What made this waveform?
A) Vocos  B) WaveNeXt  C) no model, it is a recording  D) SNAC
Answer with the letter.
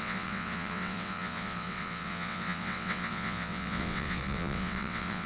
B